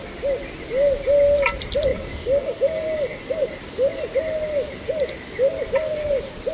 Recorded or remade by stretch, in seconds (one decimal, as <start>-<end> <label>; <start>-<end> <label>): 0.0-1.9 recorded; 1.9-3.3 remade; 3.3-6.5 recorded